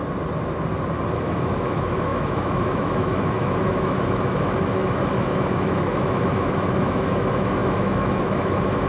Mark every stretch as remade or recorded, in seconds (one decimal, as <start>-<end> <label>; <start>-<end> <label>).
0.0-1.2 recorded; 1.2-8.9 remade